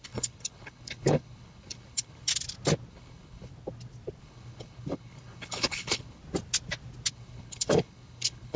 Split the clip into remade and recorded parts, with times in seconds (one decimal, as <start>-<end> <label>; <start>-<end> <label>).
0.0-2.3 remade; 2.3-2.9 recorded; 2.9-3.5 remade; 3.5-4.2 recorded; 4.2-6.2 remade; 6.2-7.1 recorded; 7.1-8.6 remade